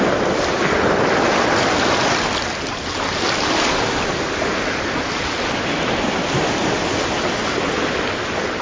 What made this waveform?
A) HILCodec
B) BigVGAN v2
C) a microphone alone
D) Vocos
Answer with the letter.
C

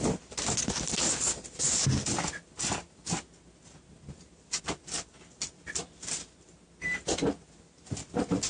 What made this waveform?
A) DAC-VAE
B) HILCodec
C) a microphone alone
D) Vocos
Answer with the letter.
C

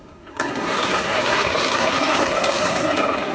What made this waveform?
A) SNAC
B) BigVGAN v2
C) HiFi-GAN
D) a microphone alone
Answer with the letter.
A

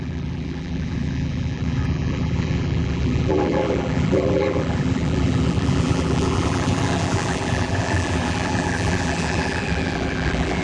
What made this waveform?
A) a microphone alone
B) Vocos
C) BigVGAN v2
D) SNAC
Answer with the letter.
C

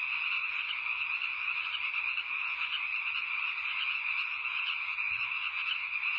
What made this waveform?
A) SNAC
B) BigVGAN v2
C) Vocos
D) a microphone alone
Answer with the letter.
C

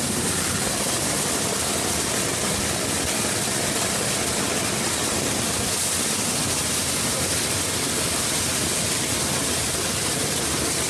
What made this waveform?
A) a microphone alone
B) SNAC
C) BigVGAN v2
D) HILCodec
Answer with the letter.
C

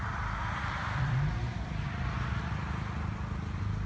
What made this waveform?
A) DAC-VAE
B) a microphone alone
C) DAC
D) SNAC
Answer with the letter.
B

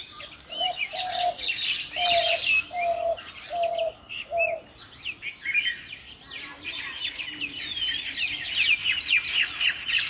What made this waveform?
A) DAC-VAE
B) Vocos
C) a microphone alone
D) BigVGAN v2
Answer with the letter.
C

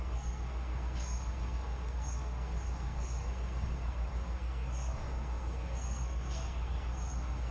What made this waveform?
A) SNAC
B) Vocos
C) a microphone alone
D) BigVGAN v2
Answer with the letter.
A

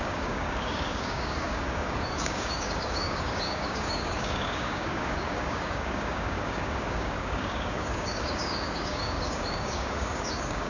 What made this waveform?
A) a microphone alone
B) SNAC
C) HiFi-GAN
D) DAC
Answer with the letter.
D